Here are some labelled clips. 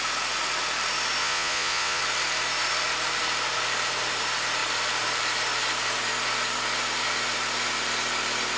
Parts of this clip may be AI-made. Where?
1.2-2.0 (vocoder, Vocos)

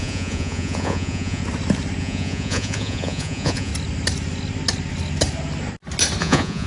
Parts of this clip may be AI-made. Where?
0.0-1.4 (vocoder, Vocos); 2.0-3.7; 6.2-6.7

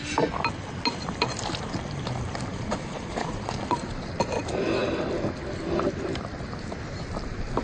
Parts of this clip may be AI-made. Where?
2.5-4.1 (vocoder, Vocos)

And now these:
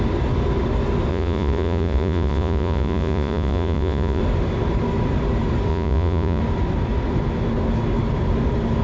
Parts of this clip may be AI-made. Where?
1.1-4.2 (vocoder, Vocos); 5.7-6.4

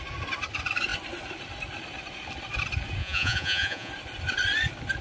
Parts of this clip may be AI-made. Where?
3.0-3.9 (vocoder, Vocos)

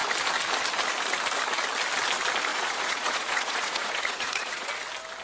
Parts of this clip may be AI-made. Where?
2.5-4.7 (vocoder, Vocos)

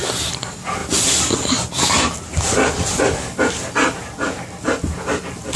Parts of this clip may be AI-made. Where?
none

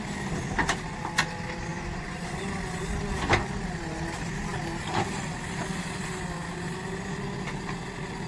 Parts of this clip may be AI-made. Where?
1.7-2.4 (vocoder, Vocos)